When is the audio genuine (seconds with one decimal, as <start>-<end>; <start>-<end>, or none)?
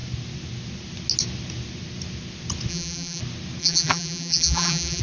0.0-2.7; 3.2-3.6